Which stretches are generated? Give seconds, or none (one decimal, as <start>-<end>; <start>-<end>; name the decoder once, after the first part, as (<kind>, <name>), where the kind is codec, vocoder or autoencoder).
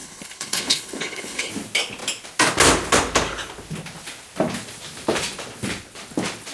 0.0-1.5 (codec, HILCodec)